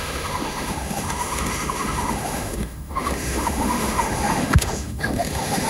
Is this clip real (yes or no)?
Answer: no